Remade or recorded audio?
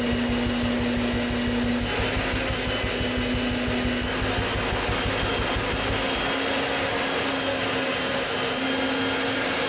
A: recorded